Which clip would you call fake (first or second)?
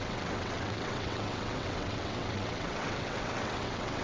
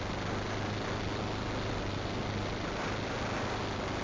first